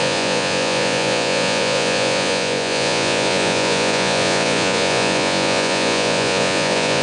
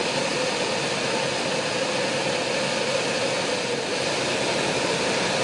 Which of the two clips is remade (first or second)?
first